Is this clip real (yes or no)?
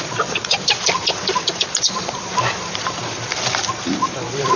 no